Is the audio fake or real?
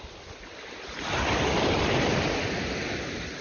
real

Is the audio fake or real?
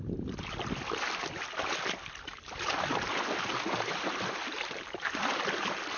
real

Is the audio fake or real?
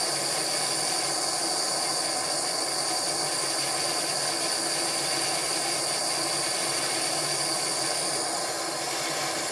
real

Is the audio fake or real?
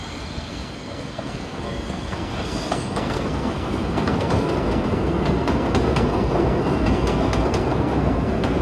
fake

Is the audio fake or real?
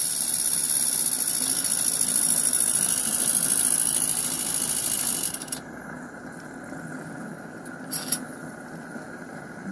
real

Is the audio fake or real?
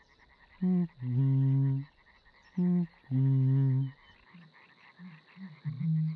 real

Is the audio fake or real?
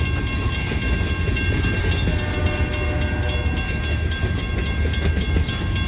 real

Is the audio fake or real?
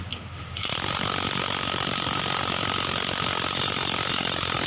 real